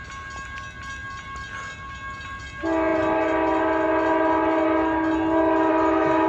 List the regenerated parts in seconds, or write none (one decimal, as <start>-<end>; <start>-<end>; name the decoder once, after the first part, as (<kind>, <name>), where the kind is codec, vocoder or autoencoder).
none